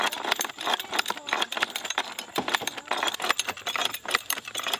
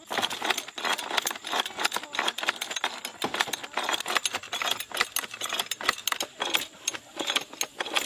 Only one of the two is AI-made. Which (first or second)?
first